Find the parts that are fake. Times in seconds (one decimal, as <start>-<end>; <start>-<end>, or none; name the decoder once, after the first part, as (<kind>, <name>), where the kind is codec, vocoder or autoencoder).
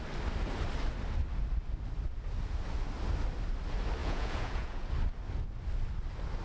4.0-4.9 (vocoder, Vocos)